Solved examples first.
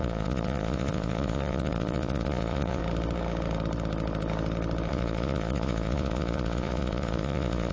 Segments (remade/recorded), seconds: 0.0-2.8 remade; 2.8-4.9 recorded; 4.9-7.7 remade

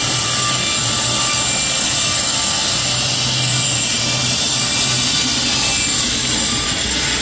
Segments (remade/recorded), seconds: 0.0-7.2 recorded

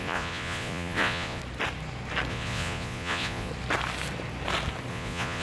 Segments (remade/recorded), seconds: 0.0-1.4 remade; 1.4-2.3 recorded; 2.3-3.5 remade; 3.5-4.9 recorded; 4.9-5.4 remade

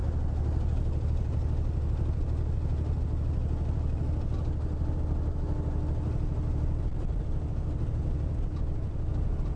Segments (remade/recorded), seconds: 0.0-9.6 recorded

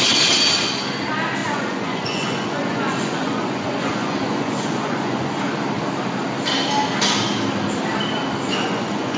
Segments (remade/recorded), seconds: 0.0-1.4 recorded; 1.4-5.4 remade; 5.4-8.5 recorded; 8.5-9.2 remade

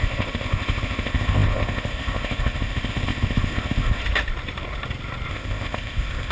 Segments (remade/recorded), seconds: 0.0-4.0 remade; 4.0-5.3 recorded; 5.3-6.3 remade